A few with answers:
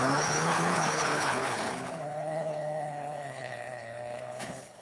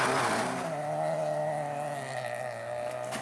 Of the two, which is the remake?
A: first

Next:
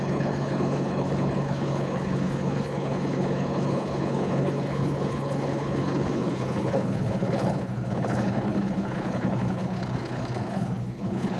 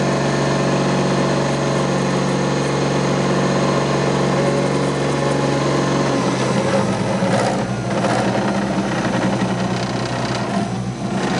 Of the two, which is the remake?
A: first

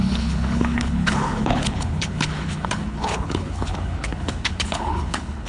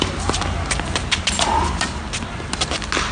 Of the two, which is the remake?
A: first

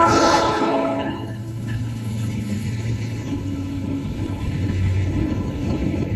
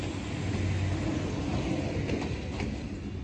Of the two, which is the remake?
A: first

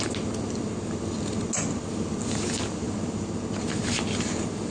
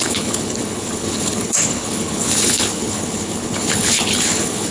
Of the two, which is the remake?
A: second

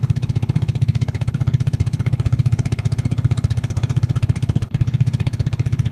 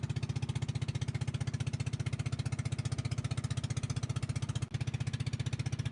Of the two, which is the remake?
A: first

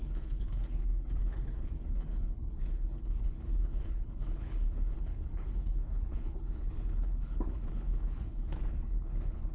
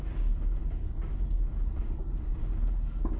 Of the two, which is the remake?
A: first